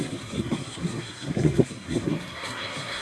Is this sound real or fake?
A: fake